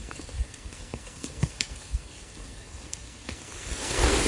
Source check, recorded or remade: remade